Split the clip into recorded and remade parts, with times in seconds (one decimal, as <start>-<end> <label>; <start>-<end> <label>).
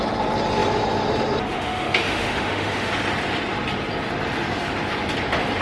0.0-1.5 recorded; 1.5-2.9 remade; 2.9-5.6 recorded